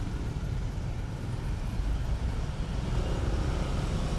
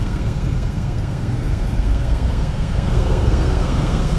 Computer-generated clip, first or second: second